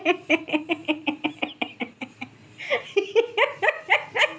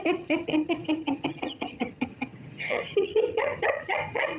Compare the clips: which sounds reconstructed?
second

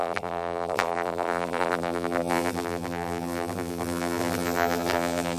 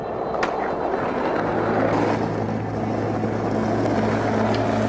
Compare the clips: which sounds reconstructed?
first